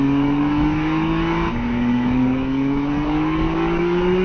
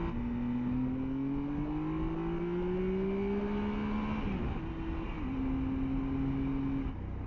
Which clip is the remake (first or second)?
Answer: first